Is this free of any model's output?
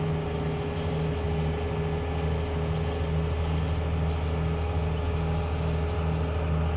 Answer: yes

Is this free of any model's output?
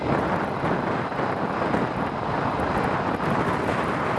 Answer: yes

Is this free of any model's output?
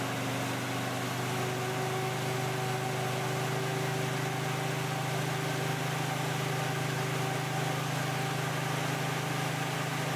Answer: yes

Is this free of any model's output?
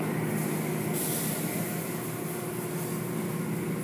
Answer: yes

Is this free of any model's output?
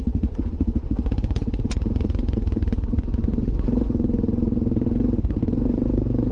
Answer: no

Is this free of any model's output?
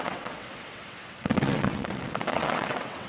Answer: no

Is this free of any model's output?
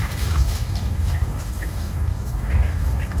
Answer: no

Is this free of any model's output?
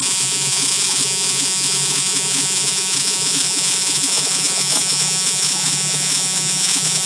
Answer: no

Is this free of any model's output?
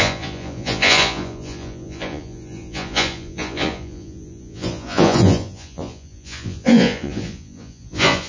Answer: no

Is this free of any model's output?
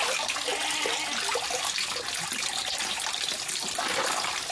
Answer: yes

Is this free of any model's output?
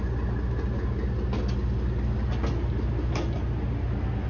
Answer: yes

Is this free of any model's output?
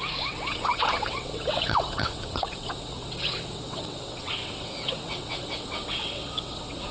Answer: no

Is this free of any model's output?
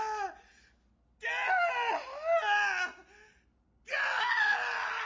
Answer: yes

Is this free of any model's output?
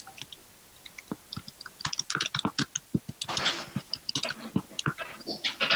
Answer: yes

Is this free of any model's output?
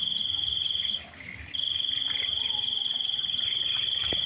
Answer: yes